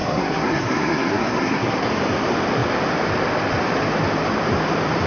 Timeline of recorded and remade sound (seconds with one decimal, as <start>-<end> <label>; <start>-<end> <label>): 0.0-1.9 remade; 1.9-5.1 recorded